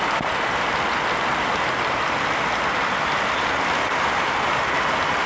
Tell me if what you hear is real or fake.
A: real